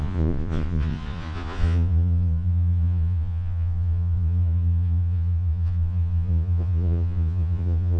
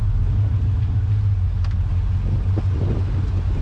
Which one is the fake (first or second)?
first